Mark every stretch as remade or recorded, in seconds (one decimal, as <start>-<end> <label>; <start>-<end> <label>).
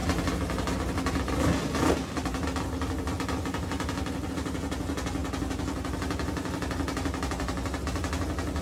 0.0-8.6 recorded